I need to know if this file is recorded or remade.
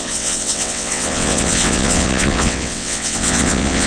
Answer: remade